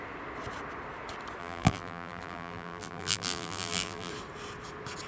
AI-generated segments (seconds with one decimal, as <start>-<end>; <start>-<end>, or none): 1.4-4.1